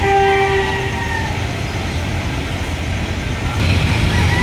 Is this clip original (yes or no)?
yes